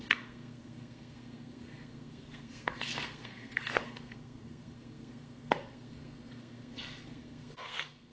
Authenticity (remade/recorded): remade